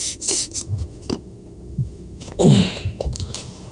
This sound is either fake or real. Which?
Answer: fake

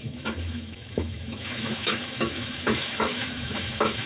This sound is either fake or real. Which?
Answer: fake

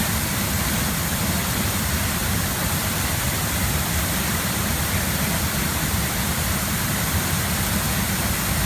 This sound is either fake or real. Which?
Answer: fake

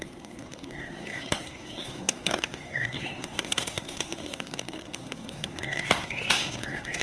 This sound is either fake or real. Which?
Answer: fake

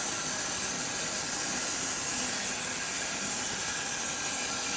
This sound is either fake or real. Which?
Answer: real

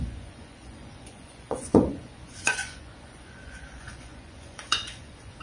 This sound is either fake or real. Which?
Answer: fake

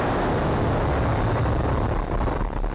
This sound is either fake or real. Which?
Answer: real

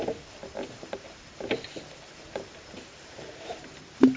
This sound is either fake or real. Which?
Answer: real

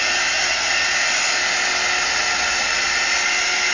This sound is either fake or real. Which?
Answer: real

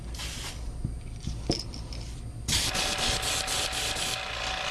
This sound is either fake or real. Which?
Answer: real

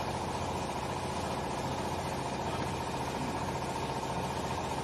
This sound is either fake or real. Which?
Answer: real